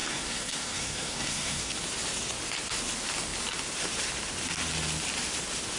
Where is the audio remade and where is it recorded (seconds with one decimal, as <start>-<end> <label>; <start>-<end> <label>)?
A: 0.0-1.7 remade; 1.7-5.8 recorded